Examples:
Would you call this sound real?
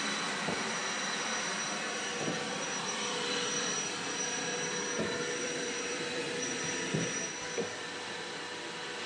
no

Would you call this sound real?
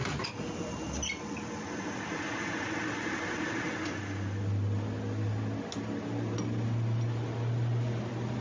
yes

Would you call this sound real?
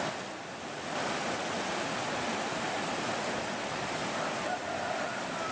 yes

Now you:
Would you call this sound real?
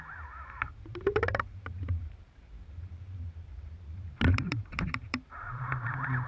no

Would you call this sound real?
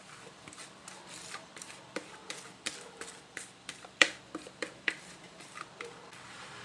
no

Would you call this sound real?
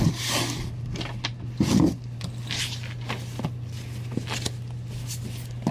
yes